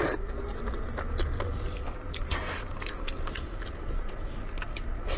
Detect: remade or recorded recorded